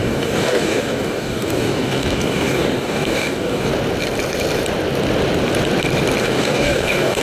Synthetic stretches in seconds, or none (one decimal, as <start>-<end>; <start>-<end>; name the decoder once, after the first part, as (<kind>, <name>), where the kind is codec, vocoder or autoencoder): 0.0-3.7 (codec, DAC); 6.2-7.2